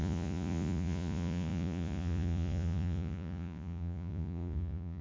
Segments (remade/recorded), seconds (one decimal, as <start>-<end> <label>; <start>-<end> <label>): 0.0-5.0 remade

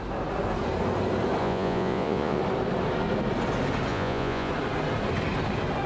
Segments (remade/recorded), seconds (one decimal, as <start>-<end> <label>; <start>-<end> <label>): 0.0-1.4 recorded; 1.4-2.4 remade; 2.4-3.9 recorded; 3.9-4.5 remade; 4.5-5.9 recorded

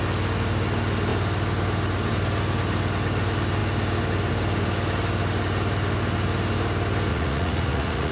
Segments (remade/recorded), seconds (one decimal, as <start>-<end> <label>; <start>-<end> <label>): 0.0-7.1 recorded; 7.1-8.1 remade

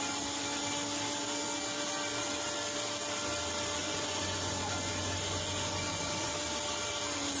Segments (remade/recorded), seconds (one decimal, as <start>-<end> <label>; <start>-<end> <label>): 0.0-3.8 recorded; 3.8-6.3 remade; 6.3-7.4 recorded

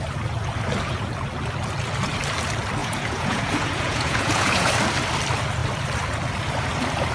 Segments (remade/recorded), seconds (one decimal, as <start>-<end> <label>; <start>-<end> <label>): 0.0-2.8 recorded; 2.8-4.7 remade; 4.7-7.1 recorded

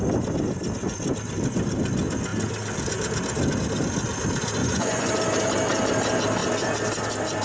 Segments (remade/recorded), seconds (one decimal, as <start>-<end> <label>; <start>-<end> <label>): 0.0-4.6 recorded; 4.6-5.1 remade; 5.1-7.4 recorded

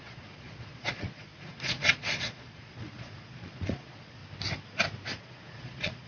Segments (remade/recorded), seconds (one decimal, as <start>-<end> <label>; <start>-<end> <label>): 0.0-4.2 remade; 4.2-5.2 recorded; 5.2-6.1 remade